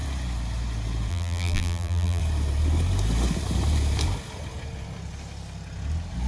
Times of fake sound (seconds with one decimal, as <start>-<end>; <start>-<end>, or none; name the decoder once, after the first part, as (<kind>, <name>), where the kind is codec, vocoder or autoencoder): 1.1-2.2 (vocoder, BigVGAN v2)